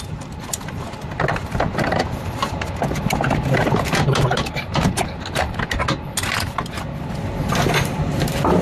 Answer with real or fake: real